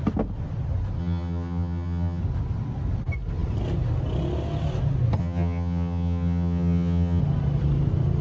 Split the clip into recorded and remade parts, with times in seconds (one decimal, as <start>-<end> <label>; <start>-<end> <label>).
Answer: 0.0-1.0 recorded; 1.0-2.2 remade; 2.2-5.2 recorded; 5.2-7.2 remade; 7.2-8.2 recorded